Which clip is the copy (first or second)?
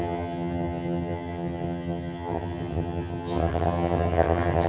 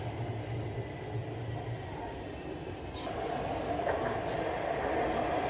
first